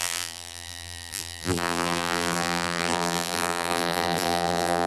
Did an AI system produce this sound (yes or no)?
yes